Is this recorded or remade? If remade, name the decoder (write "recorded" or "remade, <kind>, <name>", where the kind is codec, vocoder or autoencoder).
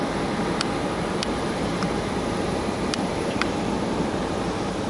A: remade, vocoder, BigVGAN v2